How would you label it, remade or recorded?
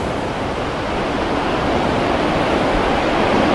recorded